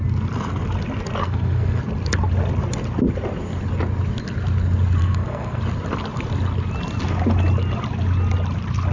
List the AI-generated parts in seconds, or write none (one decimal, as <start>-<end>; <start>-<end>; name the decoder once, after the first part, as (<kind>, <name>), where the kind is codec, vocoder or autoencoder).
1.2-1.8 (codec, SNAC); 5.0-5.6